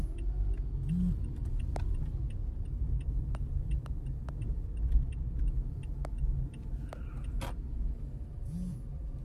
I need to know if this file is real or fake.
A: real